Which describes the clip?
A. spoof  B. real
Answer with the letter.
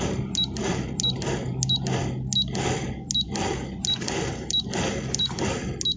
B